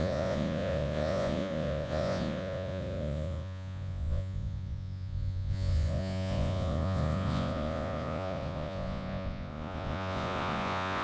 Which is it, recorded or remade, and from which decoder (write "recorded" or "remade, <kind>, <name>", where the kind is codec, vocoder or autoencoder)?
remade, vocoder, Vocos